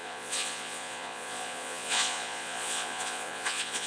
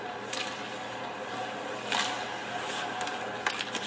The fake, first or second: first